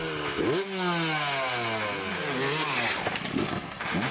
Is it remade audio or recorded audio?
recorded